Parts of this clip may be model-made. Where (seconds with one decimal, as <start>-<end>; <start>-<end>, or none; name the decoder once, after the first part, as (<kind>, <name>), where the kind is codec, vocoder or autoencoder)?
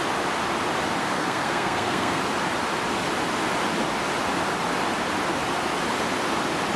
1.0-2.2 (codec, SNAC)